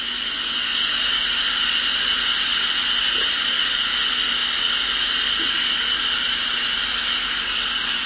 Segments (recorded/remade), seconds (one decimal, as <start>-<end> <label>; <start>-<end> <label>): 0.0-8.1 recorded